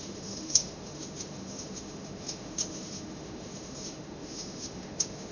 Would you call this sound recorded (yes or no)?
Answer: no